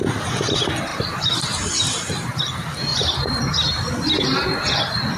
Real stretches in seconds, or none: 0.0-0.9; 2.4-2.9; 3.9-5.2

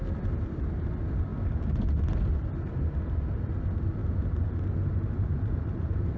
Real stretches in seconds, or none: 0.0-4.0

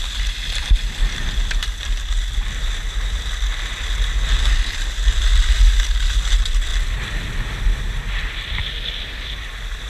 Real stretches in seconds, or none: 0.0-9.9

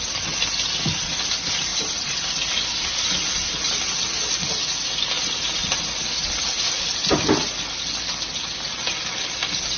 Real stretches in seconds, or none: 0.0-1.7; 2.3-9.8

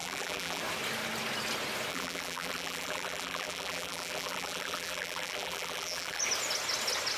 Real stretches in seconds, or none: 0.6-1.9; 6.2-7.2

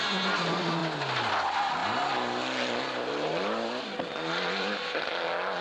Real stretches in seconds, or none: 0.0-5.6

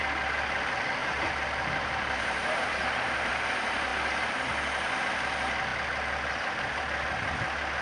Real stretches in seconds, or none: 0.0-1.0; 3.3-7.8

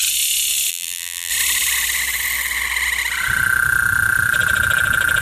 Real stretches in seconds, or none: 0.0-0.7; 1.3-5.2